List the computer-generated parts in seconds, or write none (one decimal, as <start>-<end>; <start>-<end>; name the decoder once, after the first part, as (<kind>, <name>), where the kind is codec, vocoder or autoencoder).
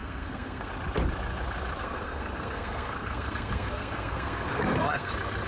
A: 0.0-0.7 (codec, SNAC); 1.8-5.1